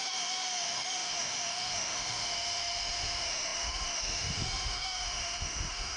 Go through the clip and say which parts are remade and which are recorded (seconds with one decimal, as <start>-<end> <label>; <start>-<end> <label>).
0.0-6.0 remade

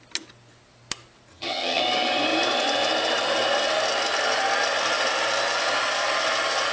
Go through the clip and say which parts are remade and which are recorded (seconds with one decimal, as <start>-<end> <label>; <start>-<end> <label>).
0.0-1.3 recorded; 1.3-1.8 remade; 1.8-6.7 recorded

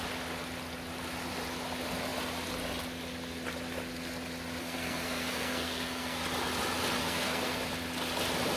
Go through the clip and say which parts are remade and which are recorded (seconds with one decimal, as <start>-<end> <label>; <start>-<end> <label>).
0.0-4.6 recorded; 4.6-6.2 remade; 6.2-7.0 recorded; 7.0-7.6 remade; 7.6-8.6 recorded

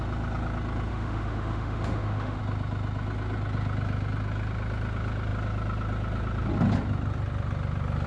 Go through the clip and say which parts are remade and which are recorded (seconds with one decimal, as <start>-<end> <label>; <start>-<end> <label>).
0.0-0.9 recorded; 0.9-2.4 remade; 2.4-8.1 recorded

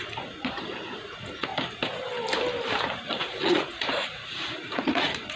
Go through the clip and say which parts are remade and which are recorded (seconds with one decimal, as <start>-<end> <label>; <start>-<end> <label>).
0.0-1.5 remade; 1.5-2.8 recorded; 2.8-5.4 remade

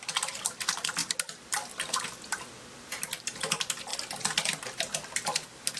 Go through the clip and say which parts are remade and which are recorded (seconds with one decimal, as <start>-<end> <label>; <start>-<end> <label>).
0.0-5.8 recorded